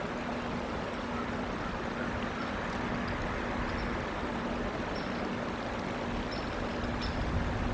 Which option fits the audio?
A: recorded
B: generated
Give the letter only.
A